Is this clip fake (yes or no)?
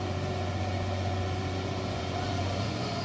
yes